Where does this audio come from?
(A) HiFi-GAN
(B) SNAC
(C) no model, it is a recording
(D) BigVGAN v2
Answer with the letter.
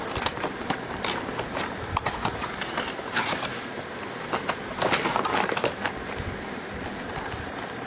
C